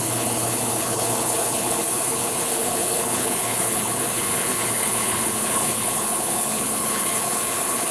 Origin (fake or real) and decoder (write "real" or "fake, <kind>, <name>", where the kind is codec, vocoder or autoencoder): fake, codec, HILCodec